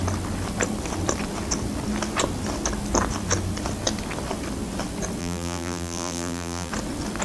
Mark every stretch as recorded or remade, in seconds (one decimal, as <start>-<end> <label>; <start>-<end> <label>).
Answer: 0.0-5.2 recorded; 5.2-6.7 remade; 6.7-7.2 recorded